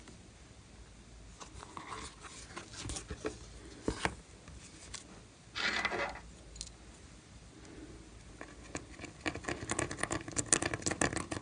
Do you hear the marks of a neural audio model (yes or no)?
no